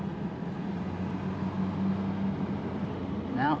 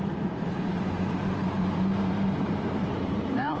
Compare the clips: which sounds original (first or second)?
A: first